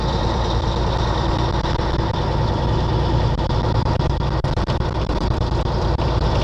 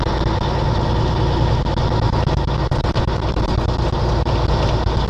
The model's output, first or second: first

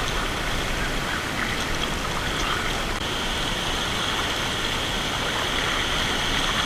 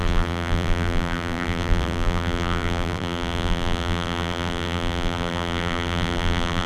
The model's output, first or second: second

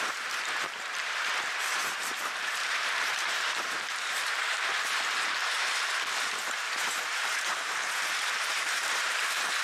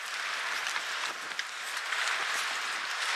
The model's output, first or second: first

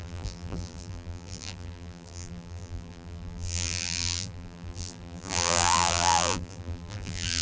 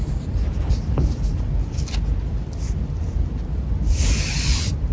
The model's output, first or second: first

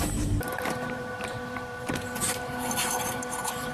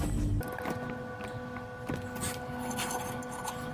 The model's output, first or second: first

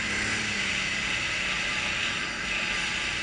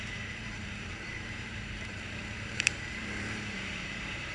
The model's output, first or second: second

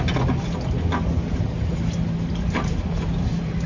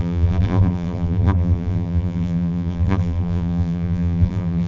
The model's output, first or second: second